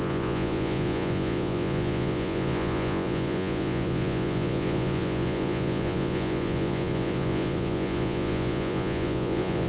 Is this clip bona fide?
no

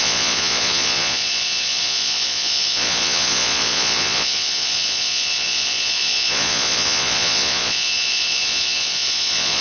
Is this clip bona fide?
no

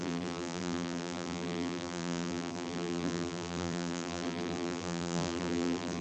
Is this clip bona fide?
no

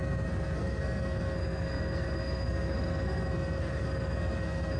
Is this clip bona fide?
no